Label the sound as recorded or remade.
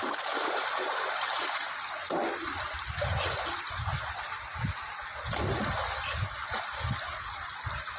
recorded